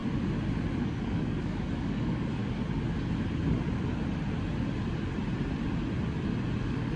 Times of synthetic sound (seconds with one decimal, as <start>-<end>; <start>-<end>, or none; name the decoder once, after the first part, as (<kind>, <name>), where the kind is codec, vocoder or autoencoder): 0.8-2.4 (codec, DAC); 6.6-7.0